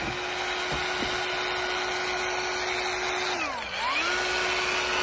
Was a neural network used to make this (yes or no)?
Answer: no